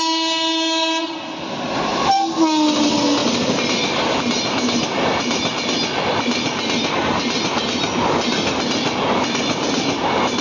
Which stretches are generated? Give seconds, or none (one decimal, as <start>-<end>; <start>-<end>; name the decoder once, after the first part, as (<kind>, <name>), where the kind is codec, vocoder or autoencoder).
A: none